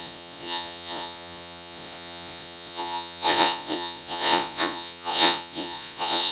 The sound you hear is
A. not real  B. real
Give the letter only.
A